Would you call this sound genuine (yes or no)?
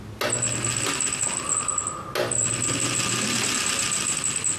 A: yes